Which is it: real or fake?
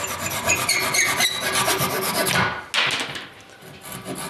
real